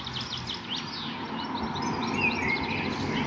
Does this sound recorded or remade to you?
recorded